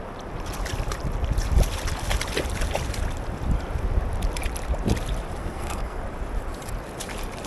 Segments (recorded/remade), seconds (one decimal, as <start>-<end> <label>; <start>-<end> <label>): 0.0-5.4 recorded; 5.4-6.0 remade; 6.0-7.5 recorded